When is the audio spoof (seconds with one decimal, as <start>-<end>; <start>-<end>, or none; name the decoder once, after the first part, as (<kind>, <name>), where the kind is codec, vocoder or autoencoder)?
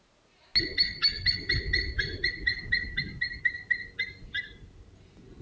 none